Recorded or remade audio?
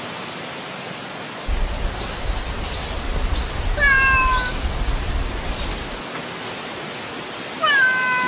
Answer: recorded